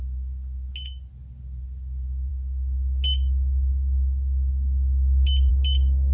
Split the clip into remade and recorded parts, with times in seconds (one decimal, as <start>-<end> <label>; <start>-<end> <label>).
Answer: 0.0-6.1 recorded